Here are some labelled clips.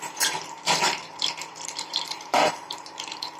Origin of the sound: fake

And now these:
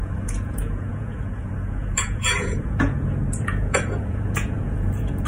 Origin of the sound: fake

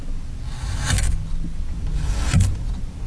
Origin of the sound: real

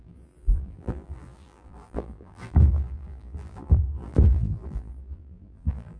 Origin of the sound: fake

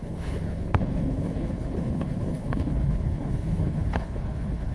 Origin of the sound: fake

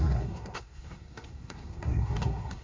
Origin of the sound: fake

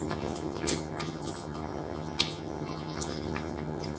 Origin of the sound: fake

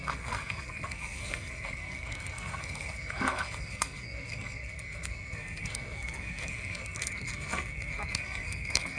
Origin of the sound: fake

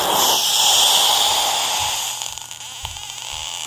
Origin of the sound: real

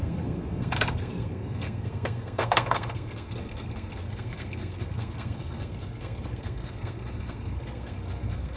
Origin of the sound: fake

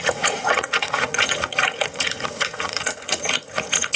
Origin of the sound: fake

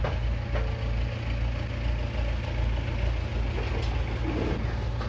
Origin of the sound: real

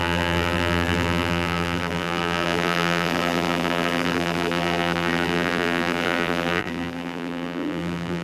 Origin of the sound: fake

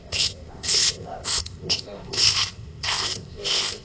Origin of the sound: fake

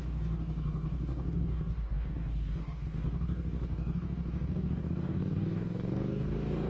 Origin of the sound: fake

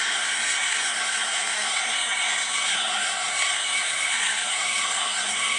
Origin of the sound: fake